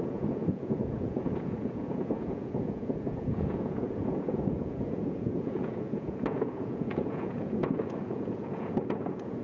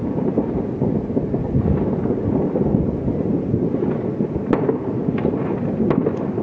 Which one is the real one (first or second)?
second